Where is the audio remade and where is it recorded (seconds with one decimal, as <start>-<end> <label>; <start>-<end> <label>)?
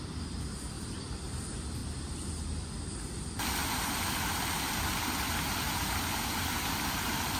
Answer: 0.0-7.4 recorded